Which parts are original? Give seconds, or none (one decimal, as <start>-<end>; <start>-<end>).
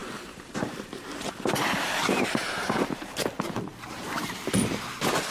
3.1-3.7; 4.3-5.3